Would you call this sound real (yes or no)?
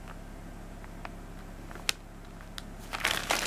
yes